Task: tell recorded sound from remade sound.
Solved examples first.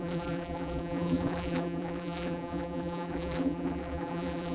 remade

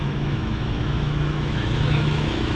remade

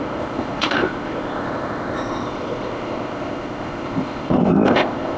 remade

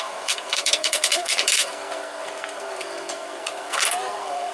remade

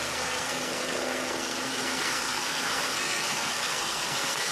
remade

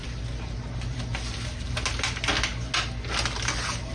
recorded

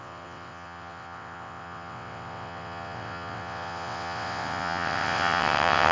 remade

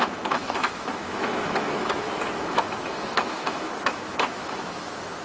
remade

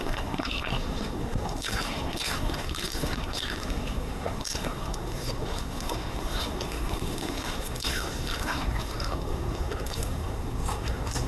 remade